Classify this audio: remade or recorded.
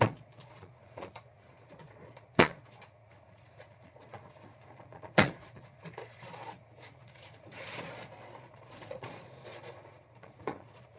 remade